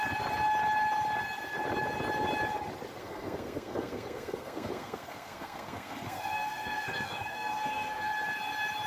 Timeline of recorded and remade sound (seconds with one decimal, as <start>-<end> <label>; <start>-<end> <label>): 0.0-3.0 recorded; 3.0-8.1 remade; 8.1-8.9 recorded